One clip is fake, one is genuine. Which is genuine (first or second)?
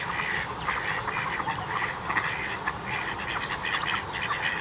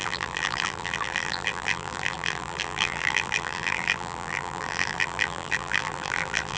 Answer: first